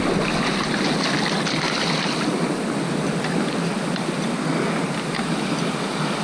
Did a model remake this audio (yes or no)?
no